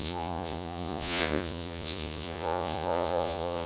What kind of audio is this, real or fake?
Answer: fake